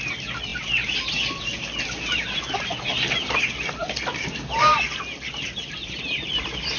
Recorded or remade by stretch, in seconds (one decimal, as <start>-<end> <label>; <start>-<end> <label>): 0.0-6.8 recorded